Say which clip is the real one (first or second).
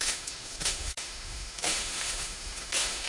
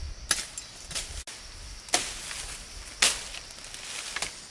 second